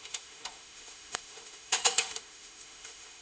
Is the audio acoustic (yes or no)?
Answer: no